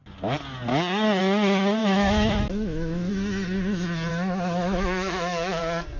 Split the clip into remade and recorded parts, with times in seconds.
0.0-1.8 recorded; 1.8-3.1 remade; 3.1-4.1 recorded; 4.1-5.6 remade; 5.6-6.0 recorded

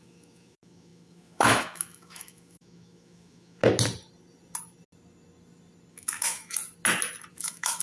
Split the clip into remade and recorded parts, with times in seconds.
0.0-3.6 remade; 3.6-5.9 recorded; 5.9-6.6 remade; 6.6-7.3 recorded; 7.3-7.8 remade

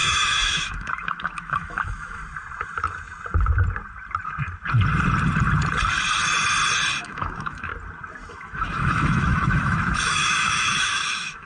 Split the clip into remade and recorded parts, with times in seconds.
0.0-2.2 remade; 2.2-7.0 recorded; 7.0-7.7 remade; 7.7-8.3 recorded; 8.3-11.5 remade